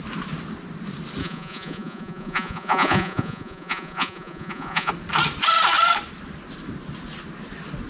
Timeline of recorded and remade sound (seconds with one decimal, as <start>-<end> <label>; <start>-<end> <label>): 0.0-1.2 recorded; 1.2-4.9 remade; 4.9-7.9 recorded